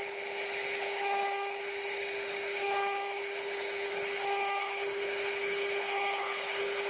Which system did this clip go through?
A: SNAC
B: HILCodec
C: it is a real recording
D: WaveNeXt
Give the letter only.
B